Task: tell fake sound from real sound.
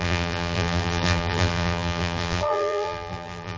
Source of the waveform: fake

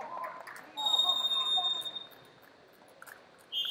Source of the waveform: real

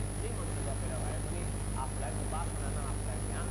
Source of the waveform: real